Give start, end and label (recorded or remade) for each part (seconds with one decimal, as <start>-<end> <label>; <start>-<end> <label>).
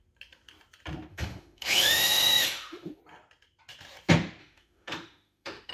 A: 0.0-1.1 recorded; 1.1-3.0 remade; 3.0-4.4 recorded; 4.4-5.7 remade